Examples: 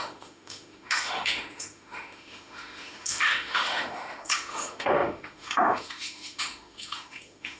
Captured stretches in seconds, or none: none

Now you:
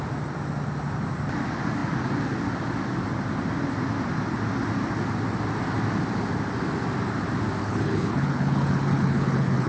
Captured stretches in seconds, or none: 0.0-7.6

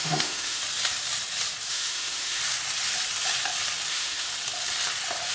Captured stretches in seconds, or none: 0.6-1.7; 2.4-3.9; 4.3-5.3

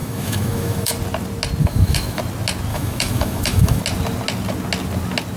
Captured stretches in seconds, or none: 0.9-1.6; 2.2-2.7; 3.8-5.4

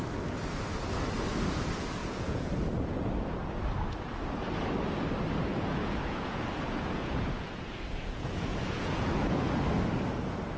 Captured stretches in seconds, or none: 0.0-2.0; 3.1-5.5; 9.5-10.6

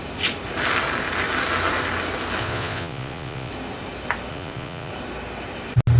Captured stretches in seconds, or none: 0.0-2.4; 3.5-4.3; 4.9-6.0

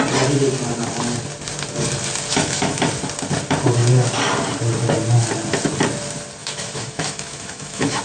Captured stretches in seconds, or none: 0.0-2.3; 2.8-6.4